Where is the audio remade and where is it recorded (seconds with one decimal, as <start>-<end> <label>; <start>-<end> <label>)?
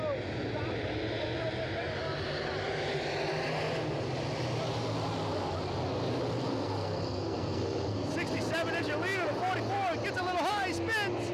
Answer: 0.0-6.4 recorded; 6.4-8.1 remade; 8.1-11.3 recorded